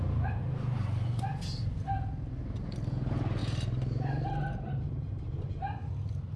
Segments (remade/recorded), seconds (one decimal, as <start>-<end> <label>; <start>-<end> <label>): 0.0-3.4 recorded; 3.4-5.9 remade; 5.9-6.4 recorded